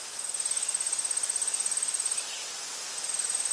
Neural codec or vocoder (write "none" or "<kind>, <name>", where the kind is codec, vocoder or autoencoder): none